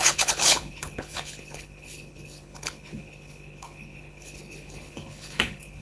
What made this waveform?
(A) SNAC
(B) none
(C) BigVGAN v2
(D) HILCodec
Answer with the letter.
D